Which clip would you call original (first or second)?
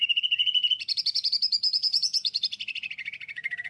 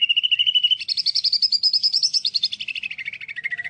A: second